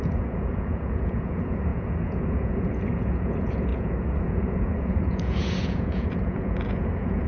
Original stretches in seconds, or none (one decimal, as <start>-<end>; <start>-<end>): none